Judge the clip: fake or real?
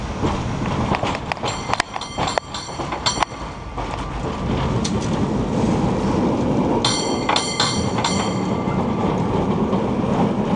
real